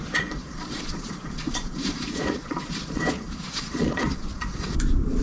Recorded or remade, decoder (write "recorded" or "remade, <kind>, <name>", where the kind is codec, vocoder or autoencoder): remade, vocoder, Vocos